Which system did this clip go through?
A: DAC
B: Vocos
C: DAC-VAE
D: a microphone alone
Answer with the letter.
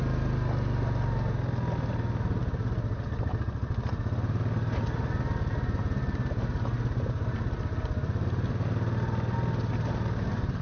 D